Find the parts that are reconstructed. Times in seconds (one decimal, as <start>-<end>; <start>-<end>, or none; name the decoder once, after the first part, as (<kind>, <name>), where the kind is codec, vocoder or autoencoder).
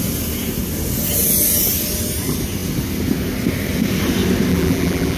4.5-5.2 (vocoder, BigVGAN v2)